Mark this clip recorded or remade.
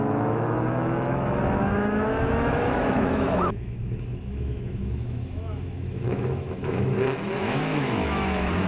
remade